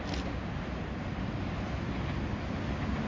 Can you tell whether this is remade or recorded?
recorded